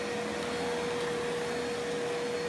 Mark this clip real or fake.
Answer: real